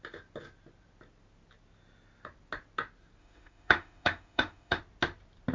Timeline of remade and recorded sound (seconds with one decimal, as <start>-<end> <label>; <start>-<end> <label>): 0.0-3.2 recorded; 3.2-4.8 remade; 4.8-5.5 recorded